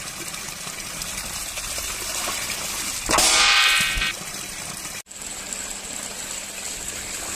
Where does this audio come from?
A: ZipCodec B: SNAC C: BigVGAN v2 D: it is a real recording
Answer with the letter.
D